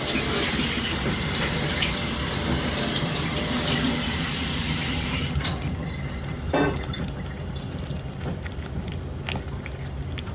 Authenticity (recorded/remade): recorded